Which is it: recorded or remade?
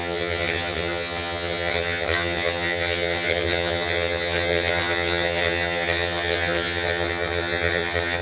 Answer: remade